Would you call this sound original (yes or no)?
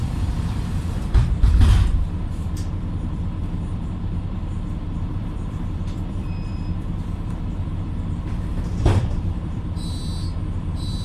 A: no